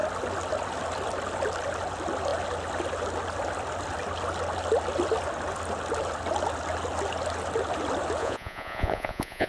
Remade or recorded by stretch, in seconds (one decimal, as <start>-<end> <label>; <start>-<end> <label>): 0.0-8.2 recorded; 8.2-9.5 remade